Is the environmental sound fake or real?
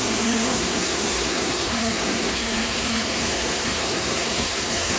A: fake